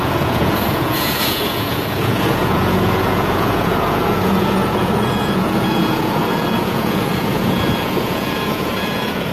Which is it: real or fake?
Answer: fake